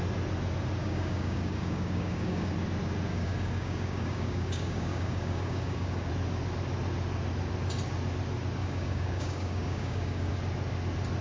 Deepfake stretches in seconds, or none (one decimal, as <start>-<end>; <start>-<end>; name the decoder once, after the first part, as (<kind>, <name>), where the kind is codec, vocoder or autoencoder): 0.8-2.5 (codec, DAC); 3.1-6.1; 8.6-10.3